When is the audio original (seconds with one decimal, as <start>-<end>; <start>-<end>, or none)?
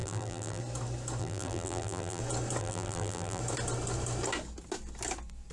0.6-1.2; 2.2-2.6; 3.4-5.5